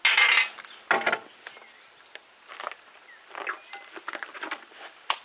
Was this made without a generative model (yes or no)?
yes